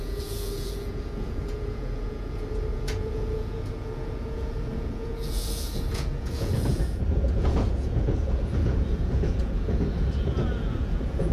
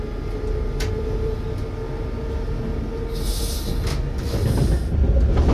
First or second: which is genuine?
second